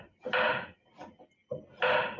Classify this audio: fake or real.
real